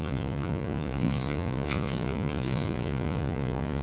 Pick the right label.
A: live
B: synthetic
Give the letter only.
B